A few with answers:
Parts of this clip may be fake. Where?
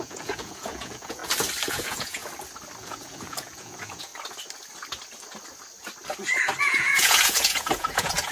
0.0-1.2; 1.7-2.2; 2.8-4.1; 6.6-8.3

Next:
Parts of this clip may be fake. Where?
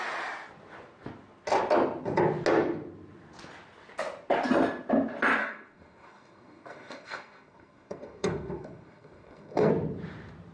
5.4-9.7